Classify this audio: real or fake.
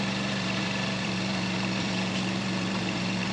fake